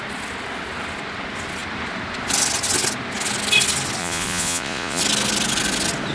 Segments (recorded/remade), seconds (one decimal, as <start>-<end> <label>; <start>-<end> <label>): 0.0-4.0 recorded; 4.0-5.0 remade; 5.0-6.1 recorded